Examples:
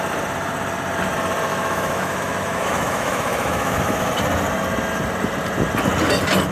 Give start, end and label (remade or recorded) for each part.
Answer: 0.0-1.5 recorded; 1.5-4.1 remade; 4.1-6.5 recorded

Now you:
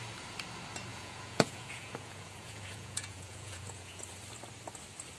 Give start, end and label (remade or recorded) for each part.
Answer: 0.0-0.9 recorded; 0.9-4.0 remade; 4.0-5.2 recorded

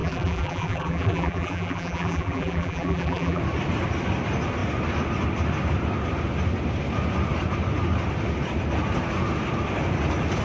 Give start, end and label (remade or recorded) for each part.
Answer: 0.0-3.4 remade; 3.4-10.4 recorded

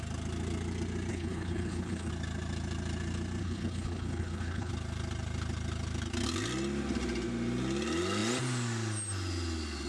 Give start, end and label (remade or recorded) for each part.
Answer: 0.0-1.1 recorded; 1.1-2.1 remade; 2.1-3.4 recorded; 3.4-4.7 remade; 4.7-9.9 recorded